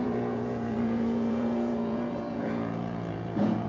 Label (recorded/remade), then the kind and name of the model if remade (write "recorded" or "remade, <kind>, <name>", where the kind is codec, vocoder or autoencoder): remade, vocoder, Vocos